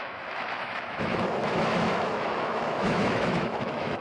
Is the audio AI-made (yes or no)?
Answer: yes